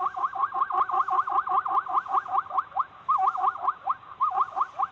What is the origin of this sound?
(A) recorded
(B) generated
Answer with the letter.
A